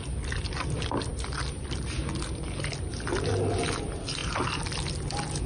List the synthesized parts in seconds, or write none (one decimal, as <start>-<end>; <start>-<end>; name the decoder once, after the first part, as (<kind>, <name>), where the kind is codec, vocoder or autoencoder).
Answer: none